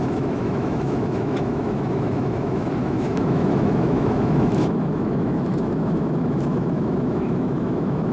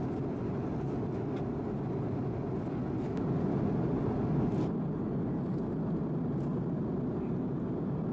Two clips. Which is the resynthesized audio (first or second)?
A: first